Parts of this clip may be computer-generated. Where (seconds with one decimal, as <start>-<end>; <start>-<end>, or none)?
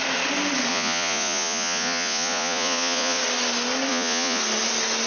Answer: 0.7-3.2; 3.9-4.4